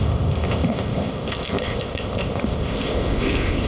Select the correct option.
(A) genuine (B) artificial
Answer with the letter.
B